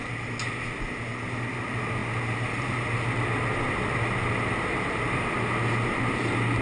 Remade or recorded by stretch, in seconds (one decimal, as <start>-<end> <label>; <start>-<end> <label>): 0.0-6.6 recorded